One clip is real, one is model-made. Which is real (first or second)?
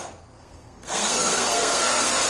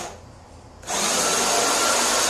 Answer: second